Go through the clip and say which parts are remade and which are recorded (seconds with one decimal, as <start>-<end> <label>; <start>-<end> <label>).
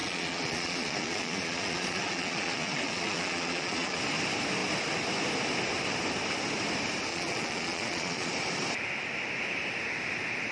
0.0-4.0 remade; 4.0-7.1 recorded; 7.1-8.3 remade; 8.3-10.5 recorded